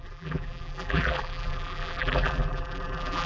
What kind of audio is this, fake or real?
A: fake